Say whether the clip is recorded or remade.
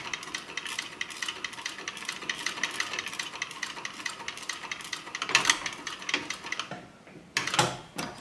recorded